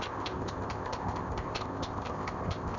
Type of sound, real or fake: fake